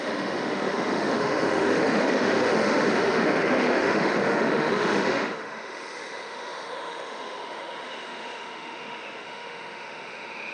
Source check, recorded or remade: remade